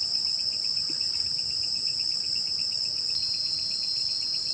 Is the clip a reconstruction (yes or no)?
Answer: no